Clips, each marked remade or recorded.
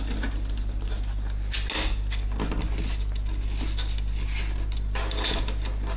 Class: recorded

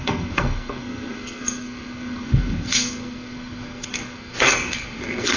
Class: remade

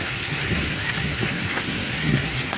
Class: remade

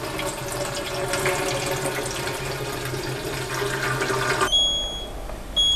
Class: recorded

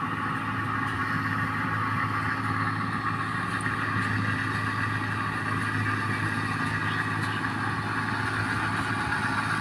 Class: recorded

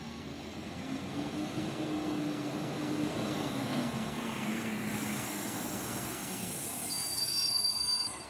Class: remade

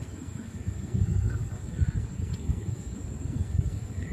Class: remade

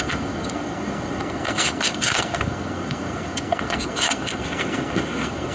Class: remade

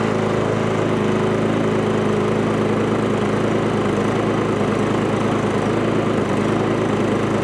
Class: recorded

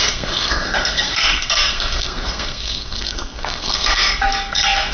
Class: remade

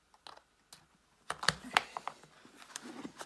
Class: recorded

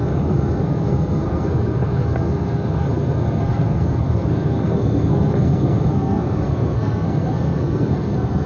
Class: remade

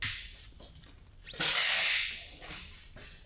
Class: recorded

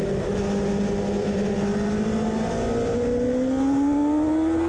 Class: recorded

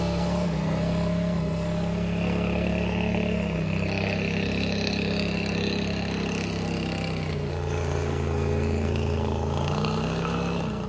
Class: remade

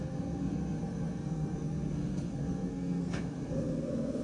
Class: remade